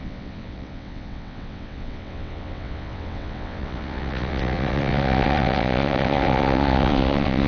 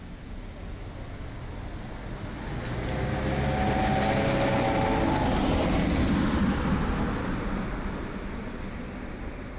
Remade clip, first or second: first